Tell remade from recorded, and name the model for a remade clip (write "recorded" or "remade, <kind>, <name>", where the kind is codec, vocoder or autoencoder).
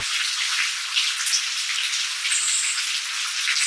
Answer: recorded